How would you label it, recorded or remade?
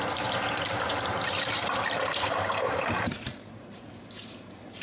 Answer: remade